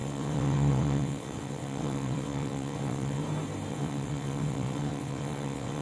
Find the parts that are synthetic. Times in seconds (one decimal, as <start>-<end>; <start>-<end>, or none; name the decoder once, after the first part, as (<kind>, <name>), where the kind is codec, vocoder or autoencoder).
0.0-3.2 (vocoder, WaveNeXt); 3.7-5.8